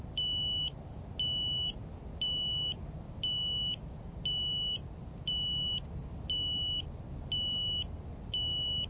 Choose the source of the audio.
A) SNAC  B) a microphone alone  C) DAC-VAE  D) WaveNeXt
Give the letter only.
B